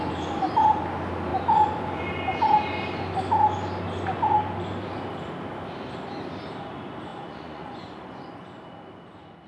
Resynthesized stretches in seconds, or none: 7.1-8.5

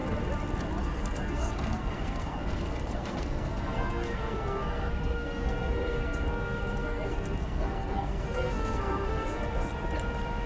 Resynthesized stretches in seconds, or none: 0.8-9.7